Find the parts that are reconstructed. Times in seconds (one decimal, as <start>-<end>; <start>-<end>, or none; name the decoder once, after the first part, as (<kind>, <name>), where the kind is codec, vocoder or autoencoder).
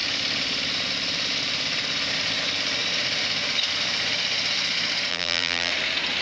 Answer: 5.1-5.7 (vocoder, BigVGAN v2)